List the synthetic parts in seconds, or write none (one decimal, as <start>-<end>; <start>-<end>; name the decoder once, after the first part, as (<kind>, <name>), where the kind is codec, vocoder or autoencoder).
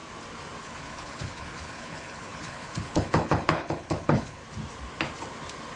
0.6-4.4 (codec, HILCodec)